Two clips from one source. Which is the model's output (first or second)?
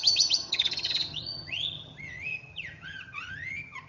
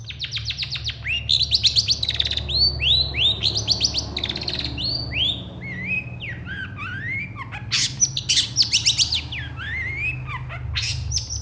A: first